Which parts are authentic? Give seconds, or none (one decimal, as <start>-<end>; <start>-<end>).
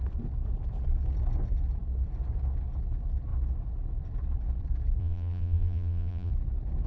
0.0-5.0; 6.3-6.9